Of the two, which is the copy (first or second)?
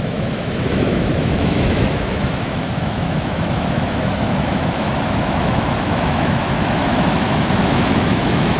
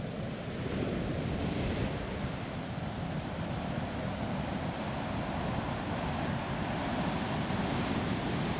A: first